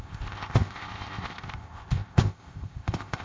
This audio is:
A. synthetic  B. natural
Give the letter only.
A